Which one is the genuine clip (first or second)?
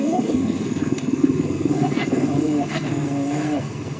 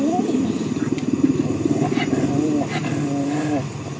second